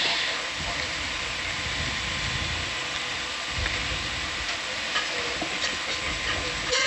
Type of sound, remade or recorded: recorded